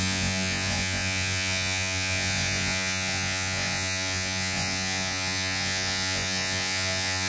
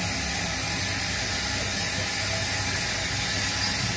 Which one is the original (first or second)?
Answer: second